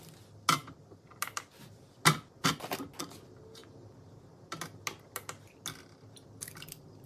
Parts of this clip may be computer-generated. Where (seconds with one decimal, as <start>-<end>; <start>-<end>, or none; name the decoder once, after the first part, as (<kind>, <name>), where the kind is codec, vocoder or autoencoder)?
none